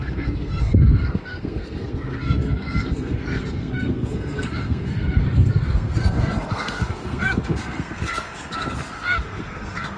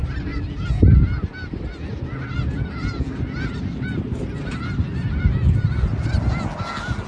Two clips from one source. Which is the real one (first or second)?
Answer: second